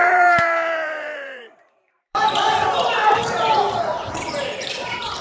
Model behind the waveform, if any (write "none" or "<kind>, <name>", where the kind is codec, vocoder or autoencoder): vocoder, BigVGAN v2